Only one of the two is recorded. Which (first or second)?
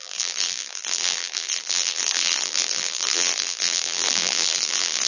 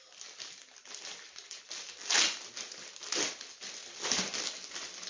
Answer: second